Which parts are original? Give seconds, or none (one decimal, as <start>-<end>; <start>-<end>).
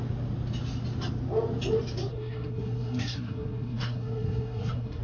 0.0-2.1